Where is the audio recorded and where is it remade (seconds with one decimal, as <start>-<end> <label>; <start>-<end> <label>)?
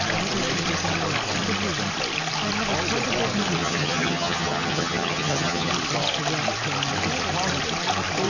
0.0-3.6 recorded; 3.6-5.7 remade; 5.7-8.3 recorded